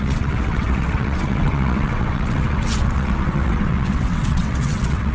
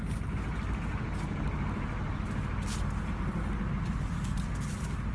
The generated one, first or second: first